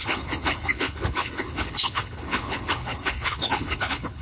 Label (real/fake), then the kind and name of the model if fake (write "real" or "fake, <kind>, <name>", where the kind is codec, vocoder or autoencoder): fake, codec, HILCodec